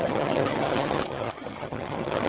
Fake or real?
fake